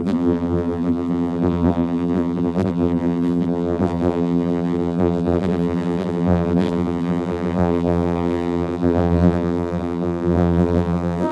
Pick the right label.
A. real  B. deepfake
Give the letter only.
B